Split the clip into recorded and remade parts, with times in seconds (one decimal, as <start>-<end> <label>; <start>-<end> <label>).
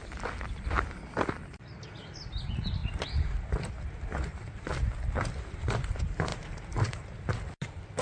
0.0-8.0 recorded